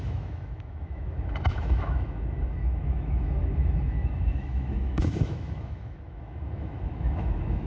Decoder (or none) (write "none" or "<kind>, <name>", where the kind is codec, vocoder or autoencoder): autoencoder, DAC-VAE